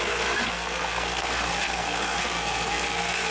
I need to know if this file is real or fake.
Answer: fake